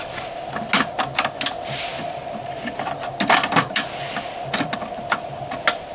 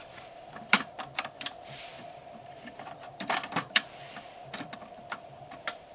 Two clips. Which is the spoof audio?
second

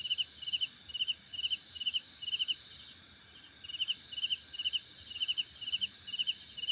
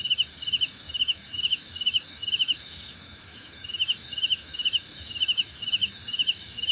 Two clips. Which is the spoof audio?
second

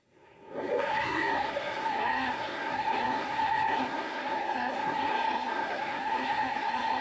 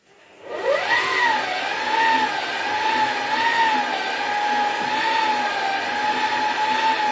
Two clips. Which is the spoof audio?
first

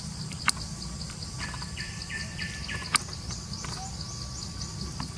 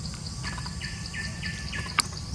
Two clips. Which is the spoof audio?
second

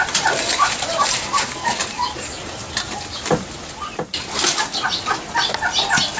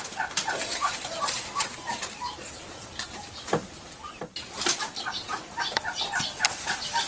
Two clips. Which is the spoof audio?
second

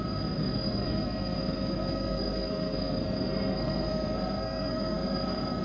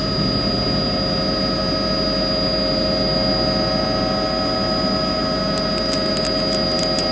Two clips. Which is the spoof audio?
first